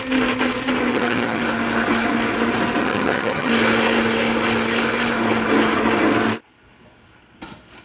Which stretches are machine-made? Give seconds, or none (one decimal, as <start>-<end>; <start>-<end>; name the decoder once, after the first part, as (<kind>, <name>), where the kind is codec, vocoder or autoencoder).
0.9-1.4 (vocoder, HiFi-GAN); 2.8-3.5